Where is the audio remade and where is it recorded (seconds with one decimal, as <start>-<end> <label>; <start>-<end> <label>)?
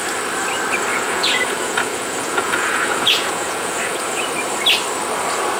0.0-0.9 recorded; 0.9-4.3 remade; 4.3-5.6 recorded